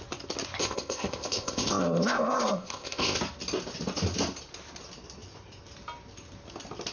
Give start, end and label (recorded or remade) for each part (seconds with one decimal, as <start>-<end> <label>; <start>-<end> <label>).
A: 0.0-0.6 recorded; 0.6-3.2 remade; 3.2-6.9 recorded